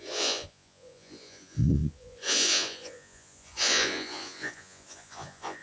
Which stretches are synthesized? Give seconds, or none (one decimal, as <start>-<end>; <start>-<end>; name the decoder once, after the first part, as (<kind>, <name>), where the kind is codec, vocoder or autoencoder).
0.0-5.6 (vocoder, Vocos)